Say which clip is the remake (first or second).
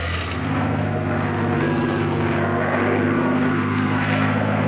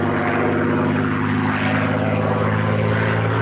first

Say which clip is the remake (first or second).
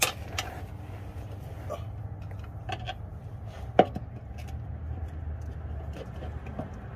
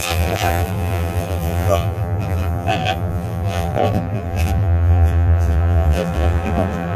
second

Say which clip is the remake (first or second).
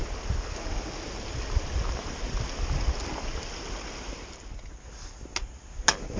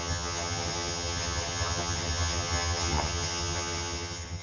second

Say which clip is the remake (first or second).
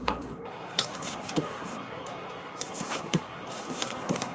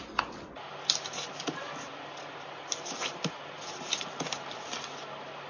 first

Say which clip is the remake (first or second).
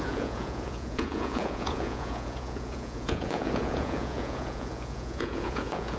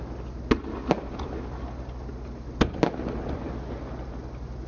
first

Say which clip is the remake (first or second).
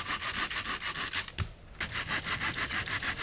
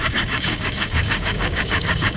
second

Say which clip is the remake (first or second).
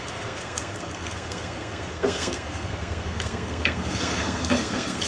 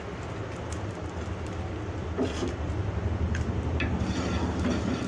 first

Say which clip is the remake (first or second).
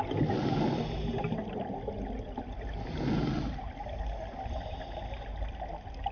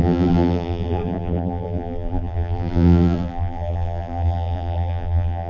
second